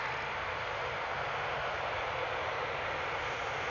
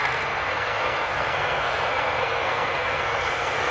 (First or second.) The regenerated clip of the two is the second